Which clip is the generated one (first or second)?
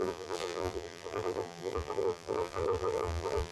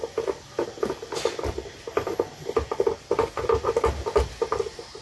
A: first